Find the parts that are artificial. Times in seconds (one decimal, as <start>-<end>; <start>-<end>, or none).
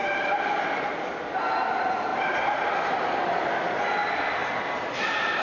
0.0-0.5; 2.1-2.7; 4.4-4.9